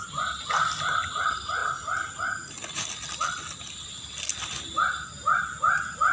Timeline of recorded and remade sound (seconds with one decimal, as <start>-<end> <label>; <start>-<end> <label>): 0.0-6.1 recorded